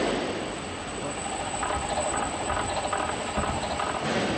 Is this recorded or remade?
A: remade